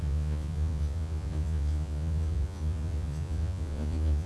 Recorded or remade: remade